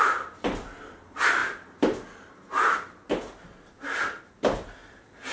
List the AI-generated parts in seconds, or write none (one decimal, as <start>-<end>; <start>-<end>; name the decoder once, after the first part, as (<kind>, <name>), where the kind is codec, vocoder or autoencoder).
none